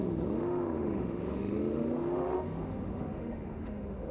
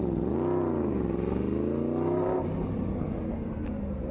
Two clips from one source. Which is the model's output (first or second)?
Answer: first